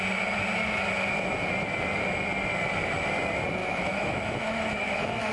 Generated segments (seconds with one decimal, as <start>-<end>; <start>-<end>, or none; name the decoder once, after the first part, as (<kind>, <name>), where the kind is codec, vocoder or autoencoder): 3.6-5.3 (autoencoder, DAC-VAE)